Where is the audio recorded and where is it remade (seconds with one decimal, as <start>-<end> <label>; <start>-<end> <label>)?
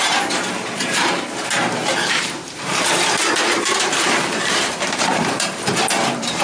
0.0-6.4 remade